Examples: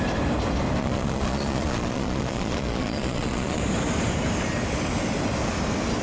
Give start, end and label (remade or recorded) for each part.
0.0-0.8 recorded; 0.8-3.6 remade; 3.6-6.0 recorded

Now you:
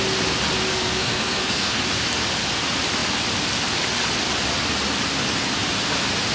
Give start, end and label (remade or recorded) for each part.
0.0-0.7 recorded; 0.7-1.8 remade; 1.8-6.3 recorded

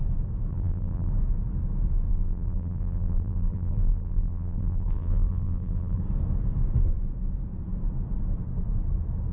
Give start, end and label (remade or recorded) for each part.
0.0-0.5 recorded; 0.5-1.1 remade; 1.1-2.1 recorded; 2.1-6.0 remade; 6.0-9.3 recorded

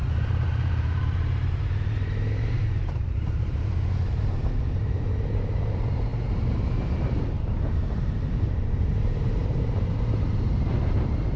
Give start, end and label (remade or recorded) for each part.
0.0-11.4 remade

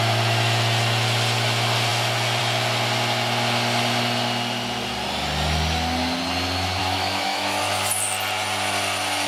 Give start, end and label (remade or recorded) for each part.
0.0-6.8 recorded; 6.8-7.6 remade; 7.6-9.3 recorded

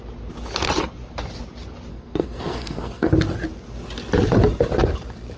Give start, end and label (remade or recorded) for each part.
0.0-1.9 recorded; 1.9-3.1 remade; 3.1-5.4 recorded

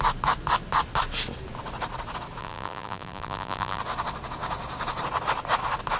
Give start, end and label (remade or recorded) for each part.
0.0-2.4 recorded; 2.4-3.8 remade; 3.8-6.0 recorded

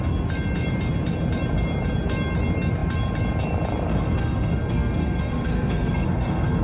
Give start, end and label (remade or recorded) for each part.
0.0-3.9 recorded; 3.9-6.6 remade